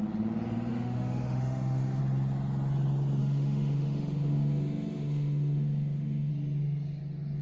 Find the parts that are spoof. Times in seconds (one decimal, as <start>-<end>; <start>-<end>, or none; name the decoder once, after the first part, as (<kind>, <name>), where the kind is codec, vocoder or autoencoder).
0.7-2.0 (autoencoder, DAC-VAE); 3.2-6.3